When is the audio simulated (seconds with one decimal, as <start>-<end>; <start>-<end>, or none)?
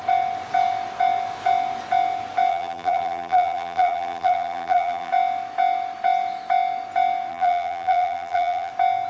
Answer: 2.5-5.1; 7.3-8.7